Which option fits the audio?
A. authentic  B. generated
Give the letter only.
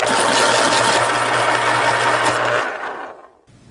A